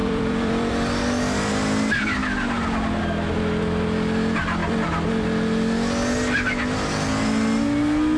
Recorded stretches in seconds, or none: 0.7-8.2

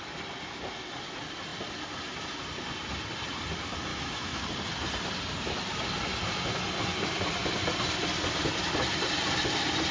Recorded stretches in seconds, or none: 0.0-3.9; 4.5-9.9

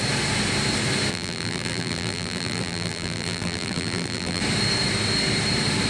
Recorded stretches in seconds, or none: 0.0-1.1; 4.4-5.9

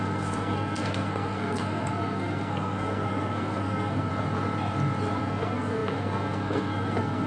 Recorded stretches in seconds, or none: 4.1-5.2

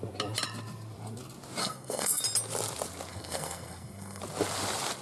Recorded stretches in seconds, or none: 0.0-1.6; 2.2-3.1; 4.2-5.0